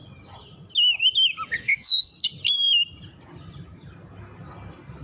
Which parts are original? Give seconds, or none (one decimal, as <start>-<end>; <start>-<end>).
0.0-1.6; 2.1-5.0